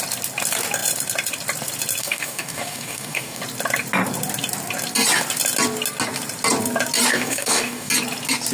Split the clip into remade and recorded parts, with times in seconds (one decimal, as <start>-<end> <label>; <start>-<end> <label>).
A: 0.0-2.0 recorded; 2.0-3.4 remade; 3.4-7.1 recorded; 7.1-7.9 remade; 7.9-8.5 recorded